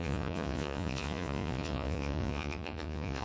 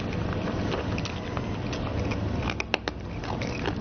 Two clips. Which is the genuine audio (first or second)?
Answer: second